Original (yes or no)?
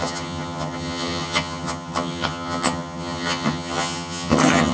no